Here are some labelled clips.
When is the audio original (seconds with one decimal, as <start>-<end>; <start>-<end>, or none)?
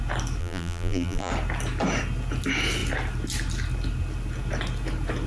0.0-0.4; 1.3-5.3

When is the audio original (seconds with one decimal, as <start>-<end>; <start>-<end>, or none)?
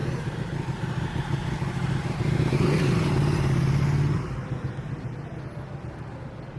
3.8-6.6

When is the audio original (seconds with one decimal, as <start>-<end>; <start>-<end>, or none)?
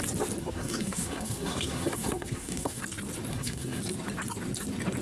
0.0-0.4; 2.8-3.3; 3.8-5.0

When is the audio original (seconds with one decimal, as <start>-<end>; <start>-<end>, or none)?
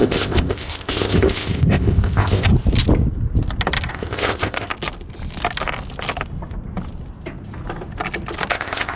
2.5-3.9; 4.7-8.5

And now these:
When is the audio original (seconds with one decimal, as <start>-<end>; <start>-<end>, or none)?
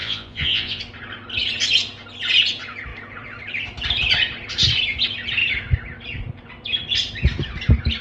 0.8-8.0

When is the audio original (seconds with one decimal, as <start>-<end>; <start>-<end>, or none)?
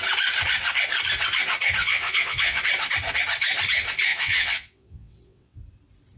0.0-1.8; 2.6-4.1; 5.6-6.2